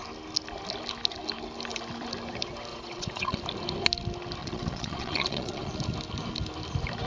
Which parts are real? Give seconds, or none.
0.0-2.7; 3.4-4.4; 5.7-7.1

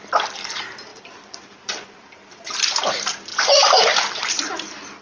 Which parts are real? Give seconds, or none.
0.0-0.9; 2.8-3.3; 4.4-5.0

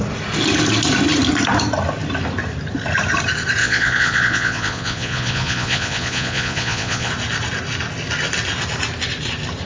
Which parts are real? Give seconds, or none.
0.0-3.6; 7.1-9.7

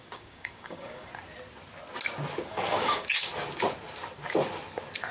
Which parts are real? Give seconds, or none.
1.1-2.5; 3.3-5.1